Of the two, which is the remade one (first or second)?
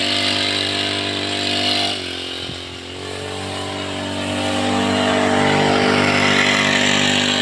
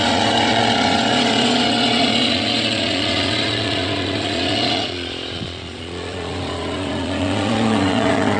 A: second